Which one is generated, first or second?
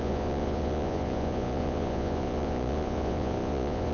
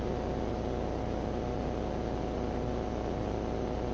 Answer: first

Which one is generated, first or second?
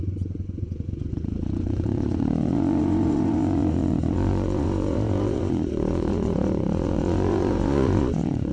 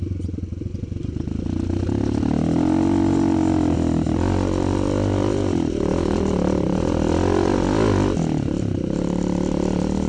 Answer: first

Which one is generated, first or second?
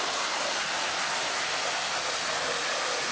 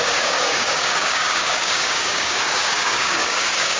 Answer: second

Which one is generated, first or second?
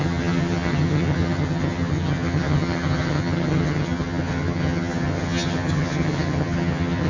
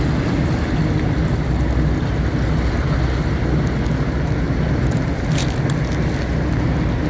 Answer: first